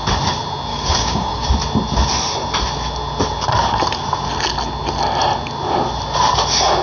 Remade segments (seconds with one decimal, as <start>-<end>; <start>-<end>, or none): 0.7-1.5